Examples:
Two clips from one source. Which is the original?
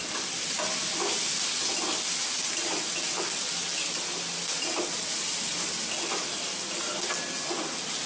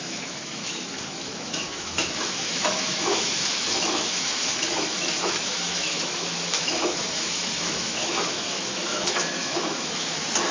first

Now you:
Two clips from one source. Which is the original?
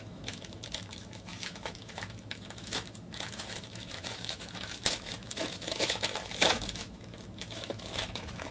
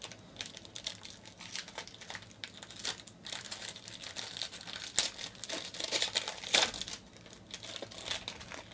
second